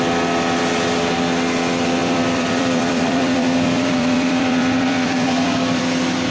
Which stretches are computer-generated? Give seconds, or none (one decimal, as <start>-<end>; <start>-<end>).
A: 2.0-5.8

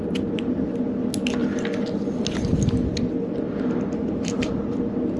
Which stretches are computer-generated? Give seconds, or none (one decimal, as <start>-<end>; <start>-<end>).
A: 4.0-4.6